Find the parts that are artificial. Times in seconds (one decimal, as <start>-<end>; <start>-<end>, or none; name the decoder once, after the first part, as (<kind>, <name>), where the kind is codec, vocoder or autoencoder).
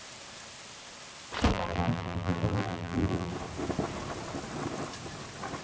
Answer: 1.5-3.3 (vocoder, BigVGAN v2)